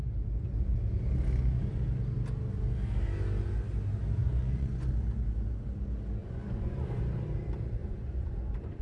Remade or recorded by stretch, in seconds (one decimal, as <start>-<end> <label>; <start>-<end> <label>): 0.0-4.2 recorded; 4.2-4.9 remade; 4.9-6.2 recorded; 6.2-7.0 remade; 7.0-7.8 recorded; 7.8-8.8 remade